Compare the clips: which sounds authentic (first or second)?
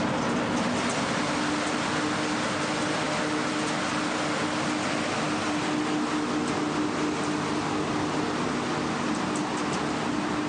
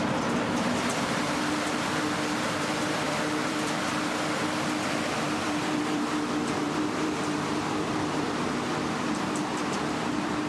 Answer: first